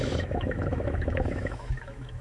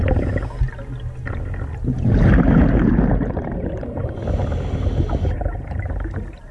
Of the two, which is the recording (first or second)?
second